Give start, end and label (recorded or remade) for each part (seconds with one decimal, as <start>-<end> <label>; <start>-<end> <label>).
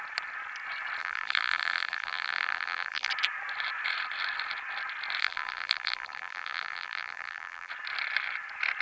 0.0-1.0 recorded; 1.0-3.1 remade; 3.1-5.2 recorded; 5.2-7.7 remade; 7.7-8.8 recorded